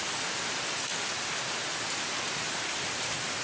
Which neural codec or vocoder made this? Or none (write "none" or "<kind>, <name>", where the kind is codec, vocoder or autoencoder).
none